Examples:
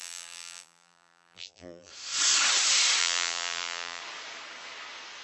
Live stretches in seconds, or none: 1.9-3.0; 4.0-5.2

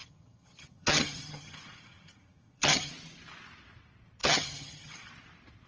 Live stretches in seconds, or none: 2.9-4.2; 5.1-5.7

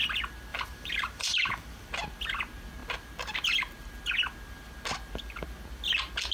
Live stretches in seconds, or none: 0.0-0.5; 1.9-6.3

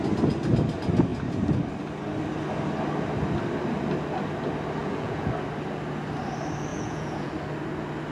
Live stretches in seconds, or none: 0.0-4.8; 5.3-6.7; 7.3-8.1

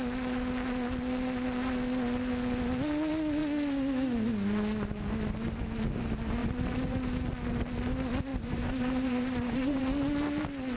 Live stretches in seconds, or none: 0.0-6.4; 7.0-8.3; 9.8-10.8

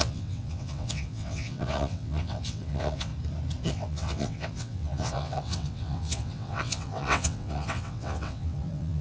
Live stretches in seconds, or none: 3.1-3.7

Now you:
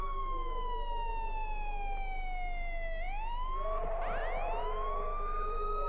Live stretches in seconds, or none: 1.1-4.6